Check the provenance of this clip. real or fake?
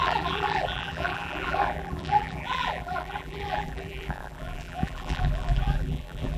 fake